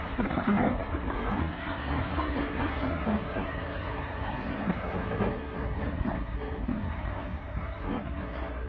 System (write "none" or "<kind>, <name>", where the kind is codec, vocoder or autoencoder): codec, SNAC